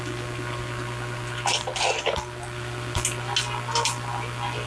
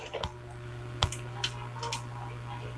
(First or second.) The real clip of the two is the first